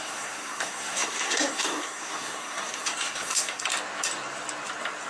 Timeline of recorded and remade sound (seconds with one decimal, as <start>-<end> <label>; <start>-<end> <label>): 0.0-3.7 remade; 3.7-5.1 recorded